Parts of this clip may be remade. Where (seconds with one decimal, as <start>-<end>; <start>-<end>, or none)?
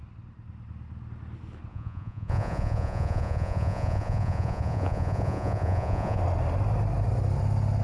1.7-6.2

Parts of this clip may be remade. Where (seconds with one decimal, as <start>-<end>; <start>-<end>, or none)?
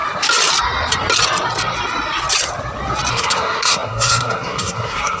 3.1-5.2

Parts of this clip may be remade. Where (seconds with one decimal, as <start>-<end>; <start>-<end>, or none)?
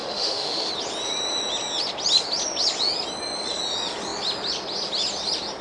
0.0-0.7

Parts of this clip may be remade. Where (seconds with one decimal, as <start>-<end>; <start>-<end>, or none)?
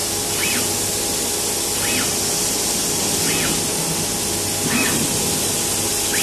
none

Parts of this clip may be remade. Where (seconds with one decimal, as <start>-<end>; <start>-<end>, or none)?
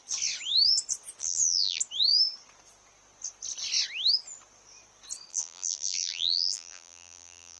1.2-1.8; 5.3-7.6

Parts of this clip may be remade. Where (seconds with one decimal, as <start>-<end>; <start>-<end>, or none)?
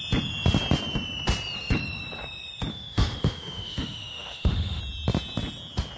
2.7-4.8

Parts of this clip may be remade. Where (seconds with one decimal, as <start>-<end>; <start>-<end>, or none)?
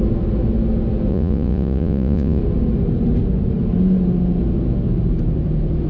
1.1-2.4